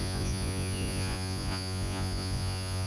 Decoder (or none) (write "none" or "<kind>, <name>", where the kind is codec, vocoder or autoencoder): vocoder, Vocos